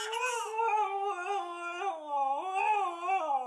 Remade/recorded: recorded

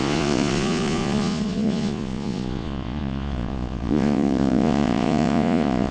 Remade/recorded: remade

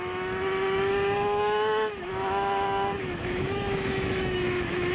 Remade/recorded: remade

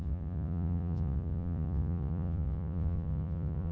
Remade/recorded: remade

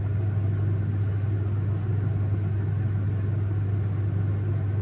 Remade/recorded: recorded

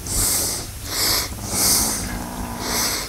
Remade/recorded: recorded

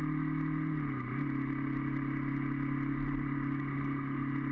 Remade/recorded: recorded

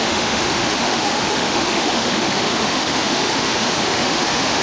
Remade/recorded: remade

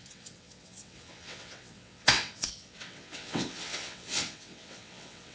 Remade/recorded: remade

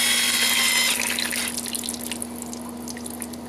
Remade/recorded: recorded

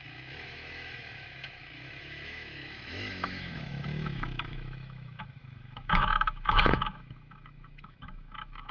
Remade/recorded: remade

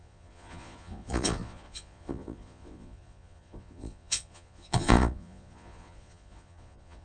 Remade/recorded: remade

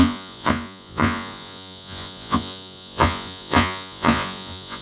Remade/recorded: remade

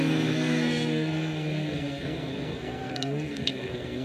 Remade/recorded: remade